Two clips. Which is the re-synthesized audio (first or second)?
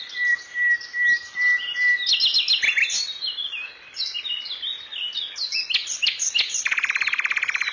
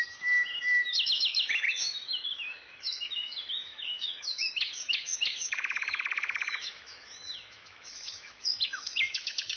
second